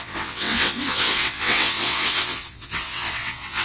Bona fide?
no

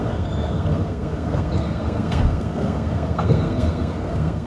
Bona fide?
no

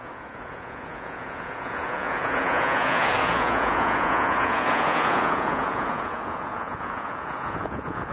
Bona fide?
no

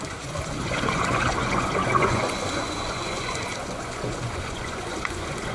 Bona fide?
no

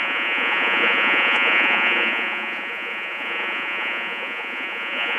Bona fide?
no